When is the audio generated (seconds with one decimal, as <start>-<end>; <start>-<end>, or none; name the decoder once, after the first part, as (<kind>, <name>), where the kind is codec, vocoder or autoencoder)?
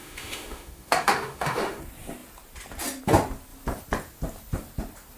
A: 0.0-1.8 (autoencoder, DAC-VAE)